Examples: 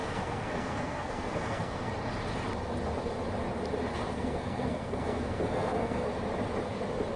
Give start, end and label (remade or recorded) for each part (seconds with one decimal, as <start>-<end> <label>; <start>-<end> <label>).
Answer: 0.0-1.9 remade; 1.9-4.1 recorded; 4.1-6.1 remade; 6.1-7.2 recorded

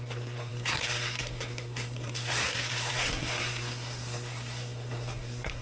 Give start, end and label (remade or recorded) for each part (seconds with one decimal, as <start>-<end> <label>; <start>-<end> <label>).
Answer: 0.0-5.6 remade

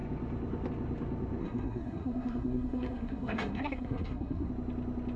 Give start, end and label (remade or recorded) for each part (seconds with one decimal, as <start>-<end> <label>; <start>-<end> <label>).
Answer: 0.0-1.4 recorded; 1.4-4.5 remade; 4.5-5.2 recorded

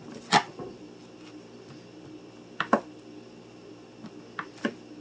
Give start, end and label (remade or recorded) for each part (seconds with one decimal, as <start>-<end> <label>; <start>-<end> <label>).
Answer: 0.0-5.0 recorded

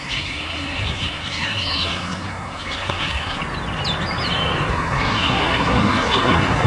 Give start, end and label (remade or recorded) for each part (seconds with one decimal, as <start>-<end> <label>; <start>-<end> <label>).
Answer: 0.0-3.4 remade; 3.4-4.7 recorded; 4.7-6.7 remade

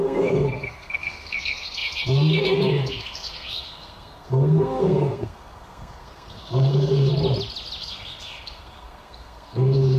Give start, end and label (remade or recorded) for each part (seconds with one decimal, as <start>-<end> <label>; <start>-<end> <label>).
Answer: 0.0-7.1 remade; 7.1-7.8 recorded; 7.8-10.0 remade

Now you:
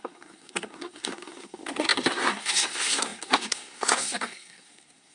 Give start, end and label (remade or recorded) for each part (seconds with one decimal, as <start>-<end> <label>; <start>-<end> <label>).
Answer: 0.0-5.1 remade

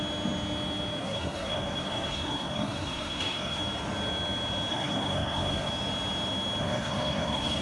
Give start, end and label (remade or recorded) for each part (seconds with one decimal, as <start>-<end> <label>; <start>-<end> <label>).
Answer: 0.0-1.0 recorded; 1.0-3.6 remade; 3.6-4.7 recorded; 4.7-5.7 remade; 5.7-6.6 recorded; 6.6-7.6 remade